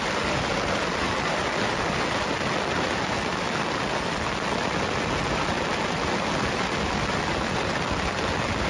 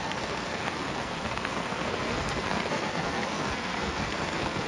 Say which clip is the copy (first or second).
second